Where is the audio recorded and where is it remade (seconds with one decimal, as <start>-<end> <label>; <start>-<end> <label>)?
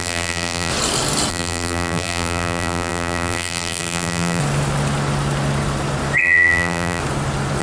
0.0-0.7 remade; 0.7-1.3 recorded; 1.3-4.4 remade; 4.4-6.2 recorded; 6.2-7.0 remade; 7.0-7.6 recorded